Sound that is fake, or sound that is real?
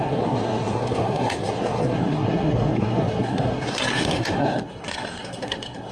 fake